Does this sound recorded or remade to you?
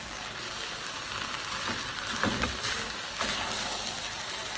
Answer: recorded